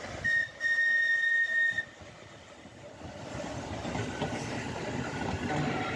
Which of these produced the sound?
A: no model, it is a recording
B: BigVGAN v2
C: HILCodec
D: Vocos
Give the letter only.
A